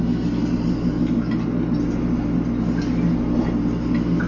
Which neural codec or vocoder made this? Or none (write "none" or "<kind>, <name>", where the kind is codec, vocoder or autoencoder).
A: none